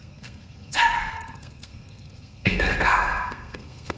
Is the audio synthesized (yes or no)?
yes